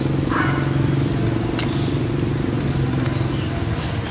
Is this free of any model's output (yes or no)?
yes